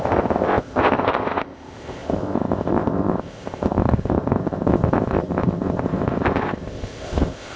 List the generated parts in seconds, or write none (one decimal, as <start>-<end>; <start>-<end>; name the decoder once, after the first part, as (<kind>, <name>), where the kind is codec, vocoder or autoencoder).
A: 0.0-7.6 (codec, ZipCodec)